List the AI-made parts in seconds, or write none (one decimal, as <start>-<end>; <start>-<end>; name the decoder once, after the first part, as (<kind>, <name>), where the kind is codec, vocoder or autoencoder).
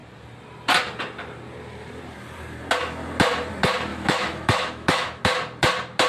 3.9-5.2 (autoencoder, DAC-VAE)